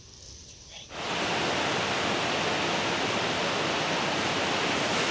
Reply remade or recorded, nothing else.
recorded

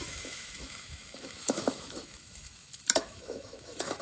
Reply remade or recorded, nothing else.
remade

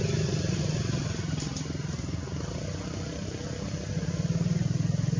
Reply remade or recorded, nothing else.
recorded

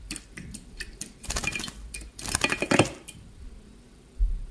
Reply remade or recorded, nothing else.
remade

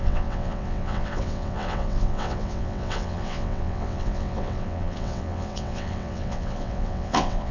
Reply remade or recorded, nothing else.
remade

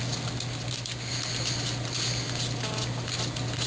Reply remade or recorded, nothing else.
recorded